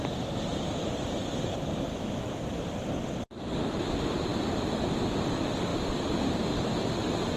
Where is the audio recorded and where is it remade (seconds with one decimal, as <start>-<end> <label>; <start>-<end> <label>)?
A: 0.0-1.9 recorded; 1.9-2.6 remade; 2.6-7.4 recorded